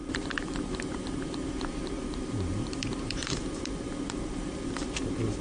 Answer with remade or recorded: remade